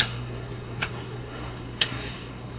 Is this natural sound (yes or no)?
no